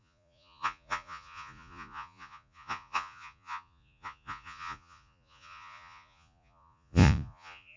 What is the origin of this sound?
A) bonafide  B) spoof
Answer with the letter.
B